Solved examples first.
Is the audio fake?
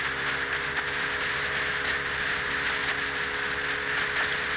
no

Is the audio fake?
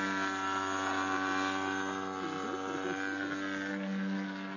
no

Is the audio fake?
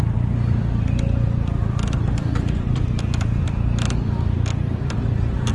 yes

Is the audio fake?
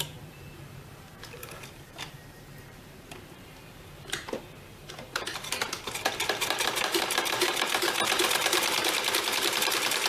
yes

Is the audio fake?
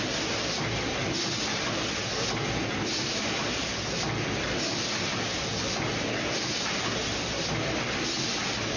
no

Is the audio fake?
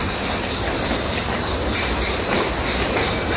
no